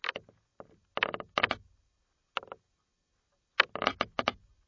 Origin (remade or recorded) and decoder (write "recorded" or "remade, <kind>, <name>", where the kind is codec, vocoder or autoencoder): recorded